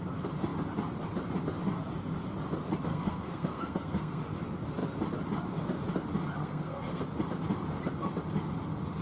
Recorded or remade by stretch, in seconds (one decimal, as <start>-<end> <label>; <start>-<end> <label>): 0.0-2.9 recorded; 2.9-4.2 remade; 4.2-6.4 recorded; 6.4-7.0 remade; 7.0-9.0 recorded